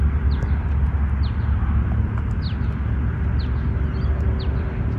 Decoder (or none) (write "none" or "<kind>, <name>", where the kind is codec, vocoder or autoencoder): none